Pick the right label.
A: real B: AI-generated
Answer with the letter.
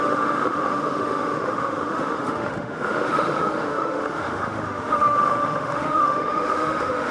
B